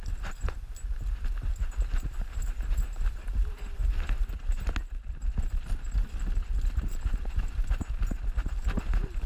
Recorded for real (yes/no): yes